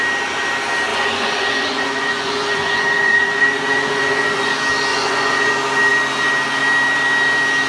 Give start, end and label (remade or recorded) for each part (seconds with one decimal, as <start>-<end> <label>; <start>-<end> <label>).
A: 0.0-0.9 recorded; 0.9-4.5 remade; 4.5-4.9 recorded; 4.9-5.5 remade; 5.5-7.7 recorded